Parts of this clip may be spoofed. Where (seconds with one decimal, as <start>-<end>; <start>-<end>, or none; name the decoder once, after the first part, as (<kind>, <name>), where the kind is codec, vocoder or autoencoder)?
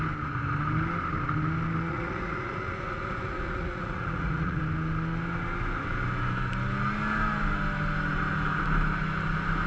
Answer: 1.9-4.6 (vocoder, Vocos)